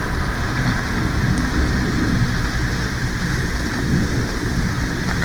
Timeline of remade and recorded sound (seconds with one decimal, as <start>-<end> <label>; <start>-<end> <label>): 0.0-3.0 recorded; 3.0-5.2 remade